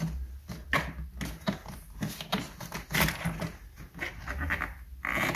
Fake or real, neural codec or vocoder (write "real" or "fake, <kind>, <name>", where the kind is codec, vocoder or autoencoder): real